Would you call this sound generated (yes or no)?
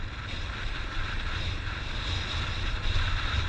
no